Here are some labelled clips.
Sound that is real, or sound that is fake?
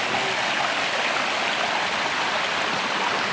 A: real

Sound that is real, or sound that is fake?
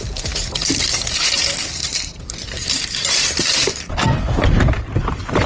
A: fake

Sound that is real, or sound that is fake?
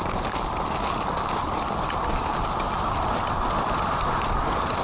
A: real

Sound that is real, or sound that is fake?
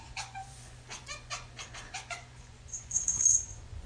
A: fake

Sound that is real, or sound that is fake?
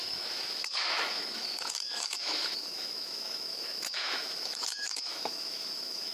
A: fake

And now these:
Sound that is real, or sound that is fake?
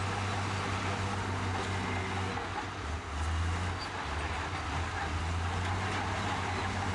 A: real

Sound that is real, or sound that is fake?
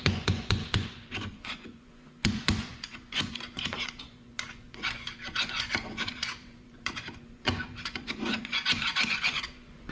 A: fake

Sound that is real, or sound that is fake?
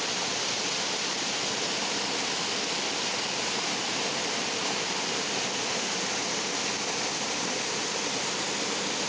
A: real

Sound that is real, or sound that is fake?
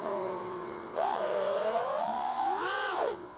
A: fake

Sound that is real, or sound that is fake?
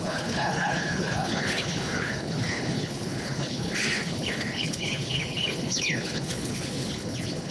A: fake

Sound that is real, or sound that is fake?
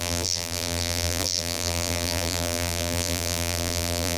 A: fake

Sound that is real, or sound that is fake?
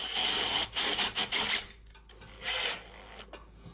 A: real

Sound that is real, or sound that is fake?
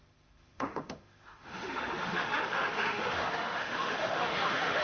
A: fake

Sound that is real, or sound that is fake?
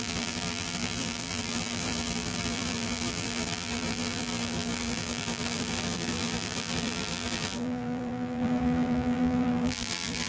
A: fake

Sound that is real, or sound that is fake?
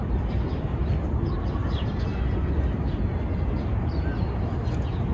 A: real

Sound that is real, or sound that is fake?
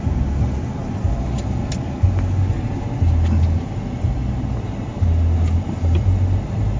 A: real